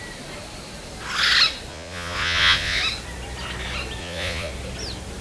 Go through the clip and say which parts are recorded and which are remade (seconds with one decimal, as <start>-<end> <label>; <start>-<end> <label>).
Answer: 0.0-1.7 recorded; 1.7-2.8 remade; 2.8-4.0 recorded; 4.0-4.5 remade; 4.5-5.2 recorded